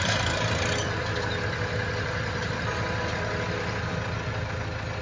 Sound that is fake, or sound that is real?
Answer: real